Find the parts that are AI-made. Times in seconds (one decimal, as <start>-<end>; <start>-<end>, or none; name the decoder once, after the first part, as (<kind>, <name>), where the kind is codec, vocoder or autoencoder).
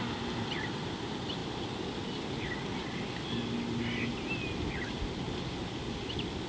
none